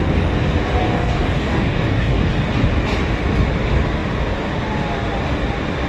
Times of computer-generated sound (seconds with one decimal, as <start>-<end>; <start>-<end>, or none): 0.8-2.3